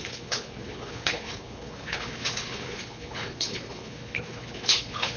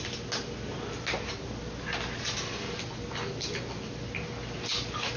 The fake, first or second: first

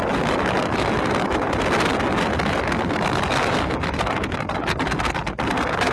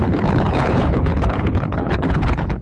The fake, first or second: second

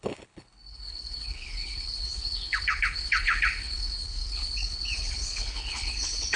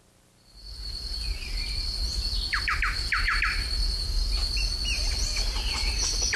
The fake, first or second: first